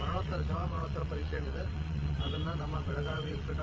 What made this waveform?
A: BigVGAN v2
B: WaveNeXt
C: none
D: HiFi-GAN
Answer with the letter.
B